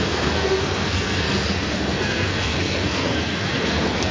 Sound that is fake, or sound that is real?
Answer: fake